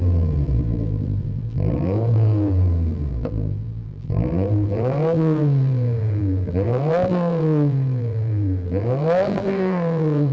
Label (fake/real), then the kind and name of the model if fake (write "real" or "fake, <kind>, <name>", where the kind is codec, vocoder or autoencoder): fake, vocoder, BigVGAN v2